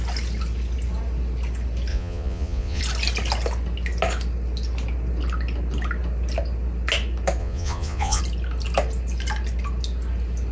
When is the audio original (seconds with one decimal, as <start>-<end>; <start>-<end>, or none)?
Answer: 0.0-1.9; 2.8-7.4; 8.2-10.5